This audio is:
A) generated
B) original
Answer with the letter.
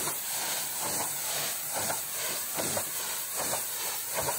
A